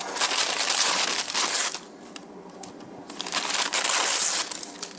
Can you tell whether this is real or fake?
real